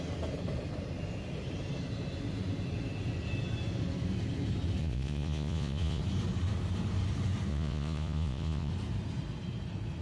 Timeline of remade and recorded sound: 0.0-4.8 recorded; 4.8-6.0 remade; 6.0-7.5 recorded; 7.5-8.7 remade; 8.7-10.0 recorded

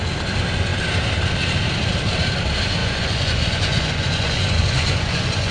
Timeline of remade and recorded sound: 0.0-2.8 recorded; 2.8-5.5 remade